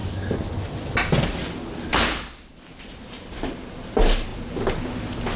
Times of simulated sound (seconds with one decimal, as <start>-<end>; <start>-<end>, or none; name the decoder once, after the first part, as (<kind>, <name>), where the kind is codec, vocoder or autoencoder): 3.1-4.3 (vocoder, BigVGAN v2)